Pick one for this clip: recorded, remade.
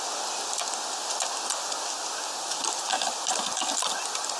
recorded